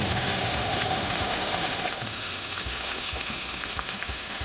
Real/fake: fake